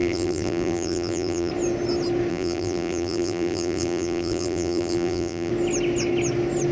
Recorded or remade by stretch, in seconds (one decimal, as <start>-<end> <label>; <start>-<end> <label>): 0.0-1.5 remade; 1.5-2.3 recorded; 2.3-5.5 remade; 5.5-6.7 recorded